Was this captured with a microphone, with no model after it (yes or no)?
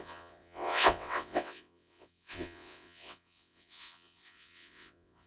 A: no